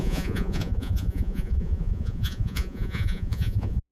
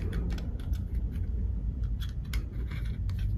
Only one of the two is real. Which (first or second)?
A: second